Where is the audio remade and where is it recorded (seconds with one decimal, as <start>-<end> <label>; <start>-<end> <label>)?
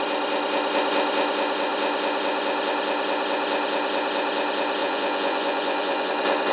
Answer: 0.0-4.8 recorded; 4.8-6.1 remade; 6.1-6.5 recorded